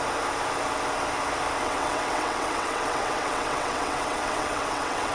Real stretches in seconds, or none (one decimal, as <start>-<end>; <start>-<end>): 0.0-1.6